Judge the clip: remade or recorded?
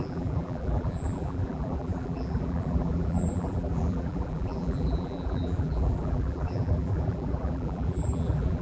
remade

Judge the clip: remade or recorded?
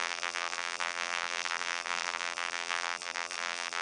remade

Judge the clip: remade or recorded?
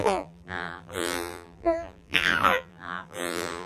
remade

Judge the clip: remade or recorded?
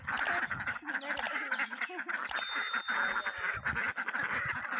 recorded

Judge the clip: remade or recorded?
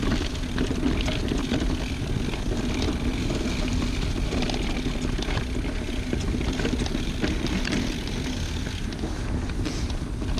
recorded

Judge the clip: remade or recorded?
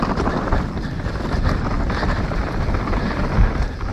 recorded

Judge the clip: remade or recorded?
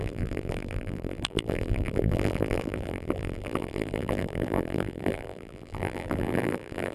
remade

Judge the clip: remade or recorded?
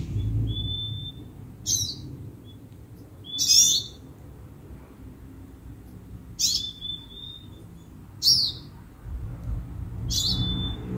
recorded